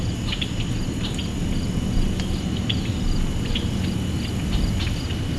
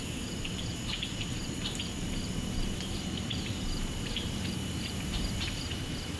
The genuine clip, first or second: first